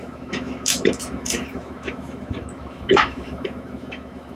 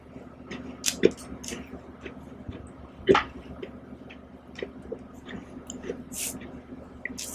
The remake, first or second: first